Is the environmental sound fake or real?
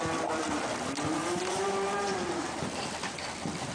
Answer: fake